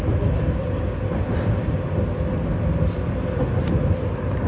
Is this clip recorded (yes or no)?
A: yes